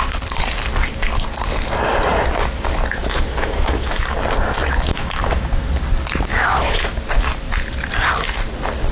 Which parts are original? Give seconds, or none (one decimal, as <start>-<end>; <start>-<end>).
0.0-3.0; 4.2-4.9; 5.6-6.3; 7.0-8.9